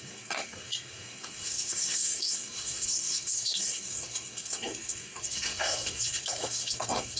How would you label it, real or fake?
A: fake